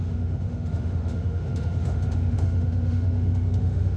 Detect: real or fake fake